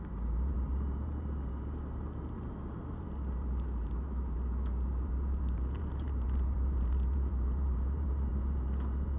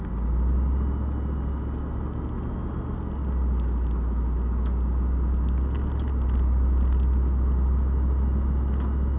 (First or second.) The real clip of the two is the second